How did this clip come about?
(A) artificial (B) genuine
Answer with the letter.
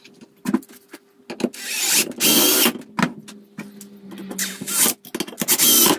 B